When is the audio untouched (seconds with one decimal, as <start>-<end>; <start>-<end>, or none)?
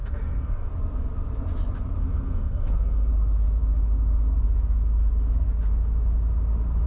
0.7-2.0; 3.1-6.9